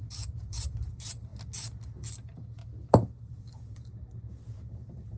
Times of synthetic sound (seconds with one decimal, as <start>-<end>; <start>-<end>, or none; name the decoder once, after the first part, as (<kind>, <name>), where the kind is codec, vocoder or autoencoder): 0.0-1.3 (vocoder, BigVGAN v2); 2.1-5.2